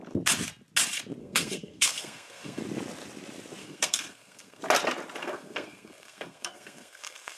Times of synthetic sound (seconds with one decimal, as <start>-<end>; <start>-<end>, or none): 1.2-2.6; 3.6-4.6; 5.2-7.4